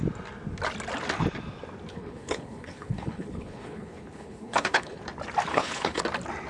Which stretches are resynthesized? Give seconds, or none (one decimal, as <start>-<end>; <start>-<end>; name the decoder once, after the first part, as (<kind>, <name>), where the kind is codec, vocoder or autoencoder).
1.9-5.0 (codec, HILCodec); 5.5-6.0